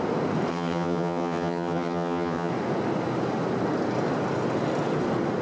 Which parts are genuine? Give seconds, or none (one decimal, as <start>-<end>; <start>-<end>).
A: 0.0-0.5; 2.5-5.4